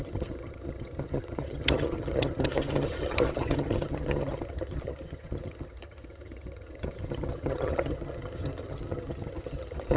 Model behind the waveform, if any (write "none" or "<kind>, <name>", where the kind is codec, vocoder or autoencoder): vocoder, HiFi-GAN